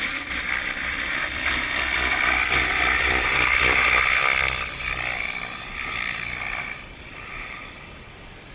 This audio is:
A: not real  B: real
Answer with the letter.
A